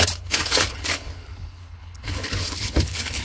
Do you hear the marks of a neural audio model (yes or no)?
yes